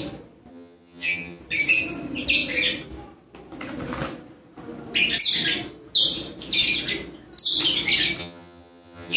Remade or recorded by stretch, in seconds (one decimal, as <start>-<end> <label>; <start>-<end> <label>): 0.0-0.5 recorded; 0.5-1.4 remade; 1.4-8.2 recorded; 8.2-9.2 remade